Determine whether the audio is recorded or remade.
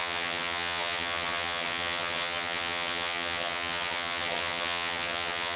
remade